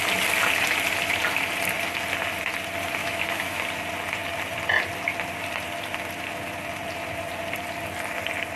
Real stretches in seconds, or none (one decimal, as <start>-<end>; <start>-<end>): 0.0-3.0; 3.6-8.6